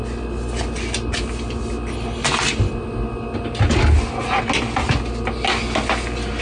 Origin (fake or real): real